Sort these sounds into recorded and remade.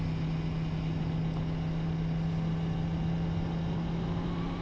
recorded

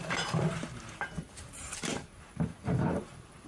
remade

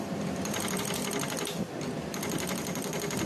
recorded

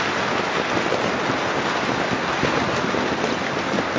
recorded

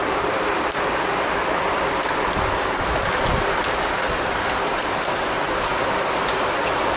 recorded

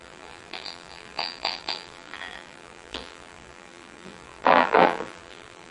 remade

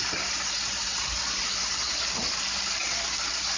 remade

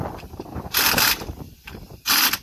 remade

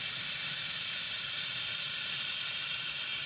remade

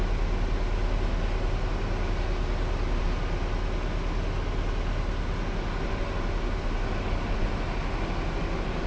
recorded